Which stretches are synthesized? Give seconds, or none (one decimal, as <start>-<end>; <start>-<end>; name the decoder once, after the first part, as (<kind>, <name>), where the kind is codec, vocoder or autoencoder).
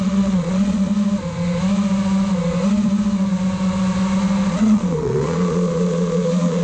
0.0-0.9 (vocoder, Vocos); 4.5-6.6